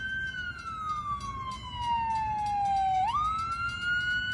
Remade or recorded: recorded